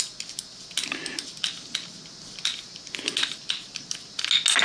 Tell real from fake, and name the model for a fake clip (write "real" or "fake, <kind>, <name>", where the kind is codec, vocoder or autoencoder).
real